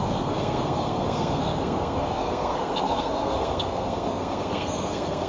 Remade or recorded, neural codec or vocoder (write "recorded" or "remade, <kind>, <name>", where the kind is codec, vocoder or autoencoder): remade, codec, SNAC